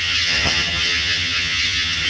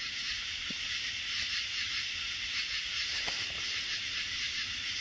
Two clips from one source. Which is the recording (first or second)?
second